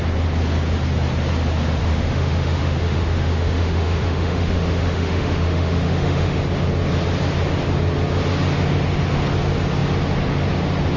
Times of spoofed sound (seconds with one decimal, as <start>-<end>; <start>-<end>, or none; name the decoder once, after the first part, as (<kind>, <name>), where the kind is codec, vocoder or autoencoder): 1.8-6.4 (autoencoder, DAC-VAE)